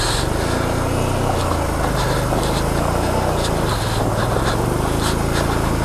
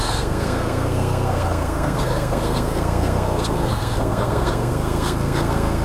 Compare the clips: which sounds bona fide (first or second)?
first